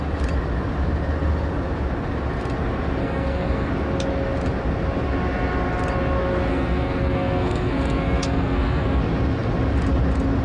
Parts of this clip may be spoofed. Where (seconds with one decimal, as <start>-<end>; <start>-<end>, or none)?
3.0-3.7; 6.5-9.0